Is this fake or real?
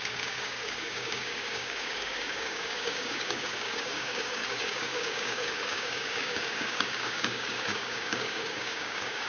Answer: fake